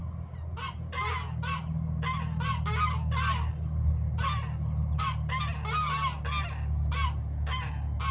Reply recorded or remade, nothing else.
recorded